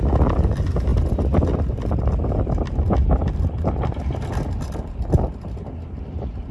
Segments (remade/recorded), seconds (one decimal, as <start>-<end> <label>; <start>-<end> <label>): 0.0-6.5 recorded